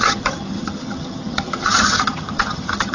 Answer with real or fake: fake